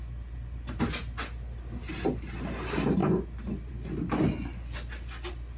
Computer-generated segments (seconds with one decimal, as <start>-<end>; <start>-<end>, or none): none